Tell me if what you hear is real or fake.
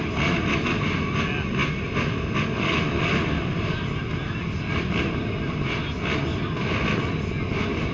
real